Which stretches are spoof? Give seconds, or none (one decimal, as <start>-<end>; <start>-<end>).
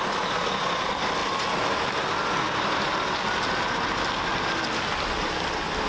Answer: none